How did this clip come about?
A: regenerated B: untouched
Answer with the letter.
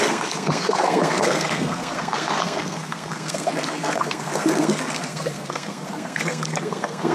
A